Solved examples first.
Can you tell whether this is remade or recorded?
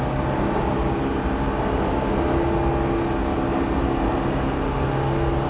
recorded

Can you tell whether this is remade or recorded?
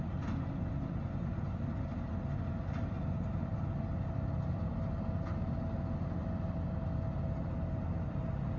recorded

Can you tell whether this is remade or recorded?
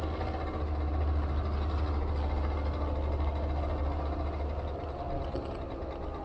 recorded